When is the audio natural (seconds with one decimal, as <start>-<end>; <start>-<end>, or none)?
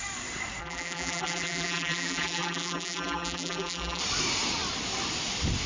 0.0-0.6; 4.0-5.7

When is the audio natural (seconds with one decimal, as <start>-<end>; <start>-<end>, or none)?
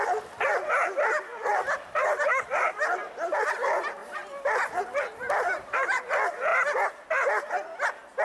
0.0-1.3; 3.3-4.0; 6.0-8.2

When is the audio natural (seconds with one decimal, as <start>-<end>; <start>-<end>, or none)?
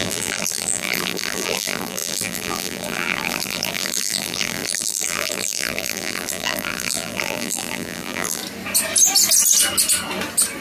8.4-10.6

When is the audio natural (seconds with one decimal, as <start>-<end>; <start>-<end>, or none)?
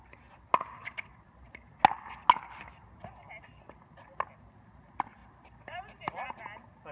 0.0-5.2; 6.3-6.9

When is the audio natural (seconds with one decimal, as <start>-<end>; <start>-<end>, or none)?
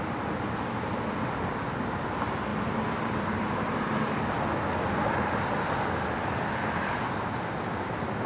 0.0-2.5; 4.9-8.3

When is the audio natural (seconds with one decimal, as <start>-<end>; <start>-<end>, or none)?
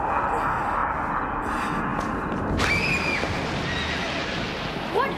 0.0-5.2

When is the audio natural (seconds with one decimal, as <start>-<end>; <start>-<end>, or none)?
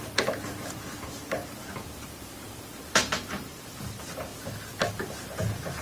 4.3-4.9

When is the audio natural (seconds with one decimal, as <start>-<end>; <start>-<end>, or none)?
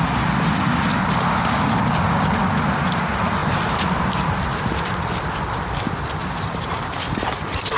0.0-3.4; 4.7-6.2